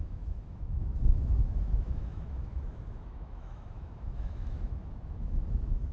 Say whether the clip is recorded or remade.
remade